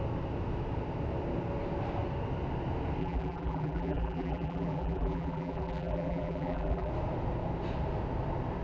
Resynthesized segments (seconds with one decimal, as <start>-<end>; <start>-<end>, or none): 3.0-6.9